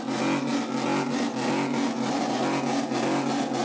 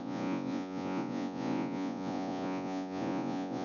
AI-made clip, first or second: second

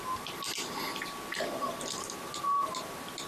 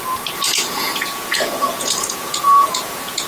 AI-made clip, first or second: second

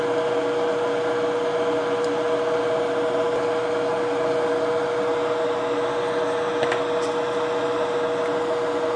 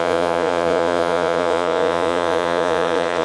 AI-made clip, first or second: second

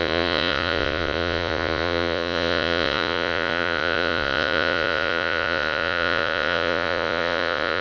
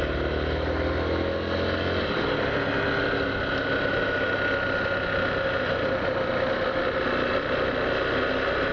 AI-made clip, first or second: first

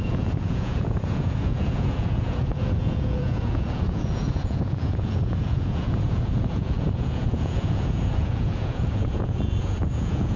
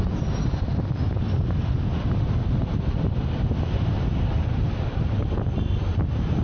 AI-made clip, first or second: first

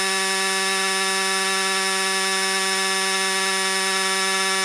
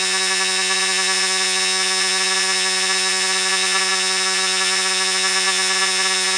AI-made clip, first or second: second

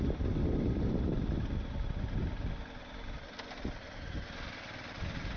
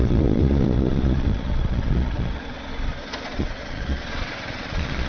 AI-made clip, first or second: second